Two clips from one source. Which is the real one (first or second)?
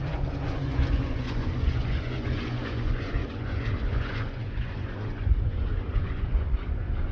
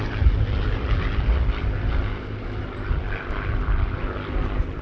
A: second